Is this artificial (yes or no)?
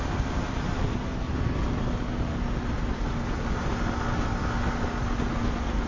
no